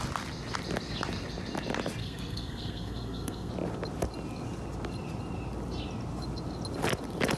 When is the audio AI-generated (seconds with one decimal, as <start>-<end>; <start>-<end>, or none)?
2.0-3.5